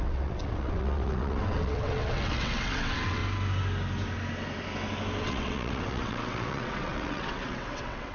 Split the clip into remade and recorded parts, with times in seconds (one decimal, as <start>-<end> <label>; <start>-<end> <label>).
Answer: 0.0-3.2 remade; 3.2-5.2 recorded; 5.2-8.1 remade